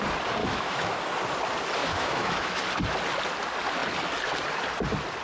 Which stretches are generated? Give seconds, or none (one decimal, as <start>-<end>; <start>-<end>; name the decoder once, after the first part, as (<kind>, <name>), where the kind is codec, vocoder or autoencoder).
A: 0.4-1.0 (autoencoder, DAC-VAE); 1.8-2.6